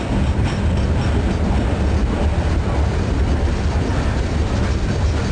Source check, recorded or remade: recorded